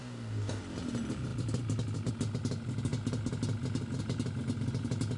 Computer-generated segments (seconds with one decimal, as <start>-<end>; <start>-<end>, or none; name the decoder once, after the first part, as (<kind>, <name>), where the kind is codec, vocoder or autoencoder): 0.0-0.6 (codec, DAC)